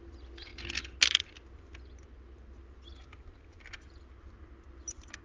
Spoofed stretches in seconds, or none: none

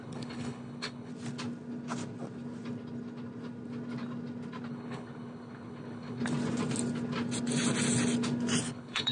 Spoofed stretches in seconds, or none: 0.0-1.1 (codec, HILCodec); 4.7-6.2; 8.6-9.1

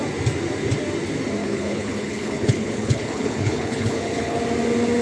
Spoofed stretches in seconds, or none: 1.4-4.4 (codec, HILCodec)

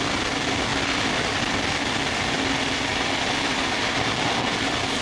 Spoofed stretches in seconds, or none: none

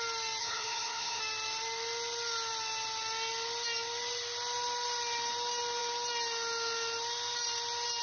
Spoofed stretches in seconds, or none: 0.4-1.2 (codec, HILCodec)

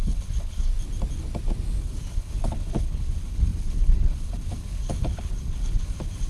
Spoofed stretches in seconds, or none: 0.0-0.7 (codec, HILCodec); 1.8-6.3

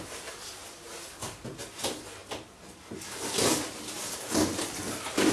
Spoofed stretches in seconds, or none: none

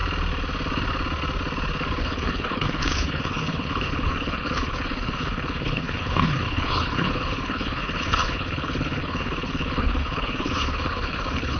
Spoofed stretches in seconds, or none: 2.0-11.6 (codec, HILCodec)